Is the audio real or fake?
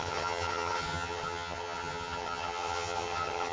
fake